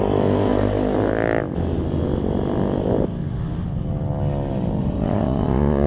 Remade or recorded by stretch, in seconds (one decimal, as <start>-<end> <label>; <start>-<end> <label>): 0.0-4.8 recorded; 4.8-5.9 remade